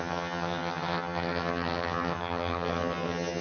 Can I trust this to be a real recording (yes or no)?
no